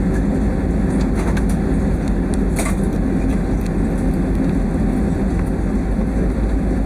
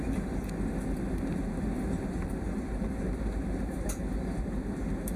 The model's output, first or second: second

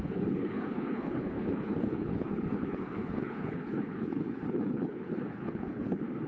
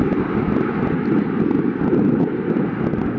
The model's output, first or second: first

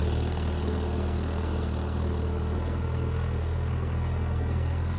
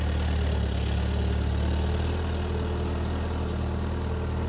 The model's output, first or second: first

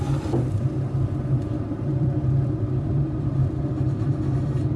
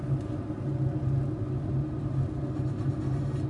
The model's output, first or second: first